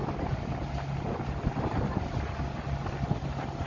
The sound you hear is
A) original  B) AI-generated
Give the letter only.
A